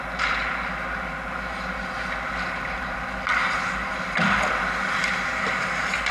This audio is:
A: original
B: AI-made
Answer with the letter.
A